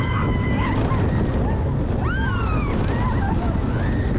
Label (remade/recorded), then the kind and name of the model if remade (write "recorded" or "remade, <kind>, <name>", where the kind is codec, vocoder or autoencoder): recorded